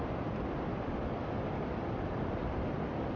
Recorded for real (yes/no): yes